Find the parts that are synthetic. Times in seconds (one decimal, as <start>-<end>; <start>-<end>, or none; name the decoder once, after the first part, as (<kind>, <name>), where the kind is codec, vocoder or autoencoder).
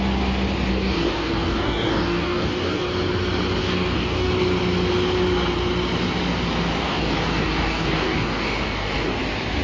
0.7-2.9 (codec, DAC); 3.6-4.3; 6.8-9.2